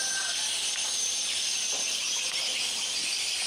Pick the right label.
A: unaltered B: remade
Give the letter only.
A